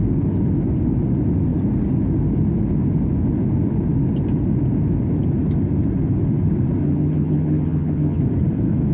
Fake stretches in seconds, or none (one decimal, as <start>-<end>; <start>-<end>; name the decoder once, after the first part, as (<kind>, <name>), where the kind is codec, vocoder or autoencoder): 6.8-8.2 (vocoder, HiFi-GAN)